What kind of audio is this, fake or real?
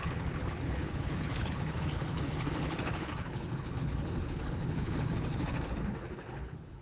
fake